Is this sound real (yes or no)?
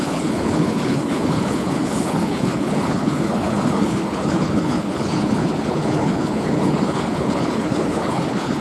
no